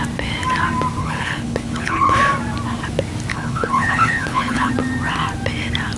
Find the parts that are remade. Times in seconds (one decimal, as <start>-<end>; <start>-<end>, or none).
1.0-2.2; 3.3-4.7